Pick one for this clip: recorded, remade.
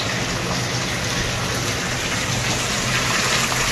recorded